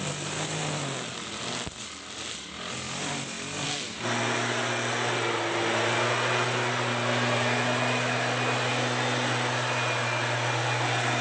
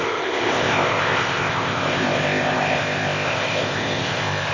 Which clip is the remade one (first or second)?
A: second